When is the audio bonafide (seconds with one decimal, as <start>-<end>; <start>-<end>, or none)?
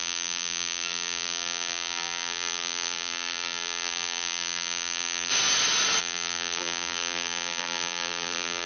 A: 5.3-6.0